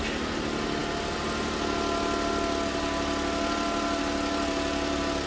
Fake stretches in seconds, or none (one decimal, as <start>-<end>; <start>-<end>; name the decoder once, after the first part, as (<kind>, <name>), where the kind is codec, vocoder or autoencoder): none